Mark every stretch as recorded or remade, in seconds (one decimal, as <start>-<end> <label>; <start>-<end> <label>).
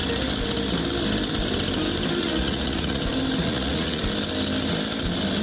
0.0-2.2 recorded; 2.2-3.0 remade; 3.0-3.4 recorded; 3.4-4.0 remade; 4.0-5.4 recorded